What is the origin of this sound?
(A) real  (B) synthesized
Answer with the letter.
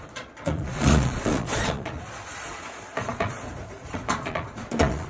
B